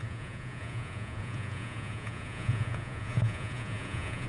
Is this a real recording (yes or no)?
no